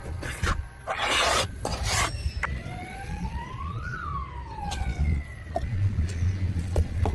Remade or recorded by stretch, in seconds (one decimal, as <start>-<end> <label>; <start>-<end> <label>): 0.0-1.7 remade; 1.7-2.5 recorded; 2.5-4.1 remade; 4.1-4.6 recorded; 4.6-7.1 remade